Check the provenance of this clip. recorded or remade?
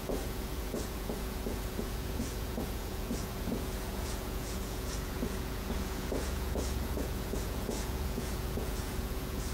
remade